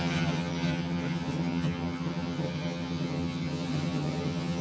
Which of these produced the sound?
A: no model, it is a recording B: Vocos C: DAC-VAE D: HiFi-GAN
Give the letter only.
D